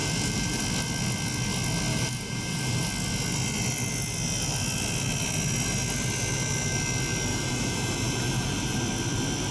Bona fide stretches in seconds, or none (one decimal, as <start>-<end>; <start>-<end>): 0.6-1.9; 2.9-7.3; 8.8-9.5